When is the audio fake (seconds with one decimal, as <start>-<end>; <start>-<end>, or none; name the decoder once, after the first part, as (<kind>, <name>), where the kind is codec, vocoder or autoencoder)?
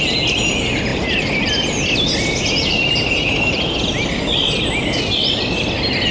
none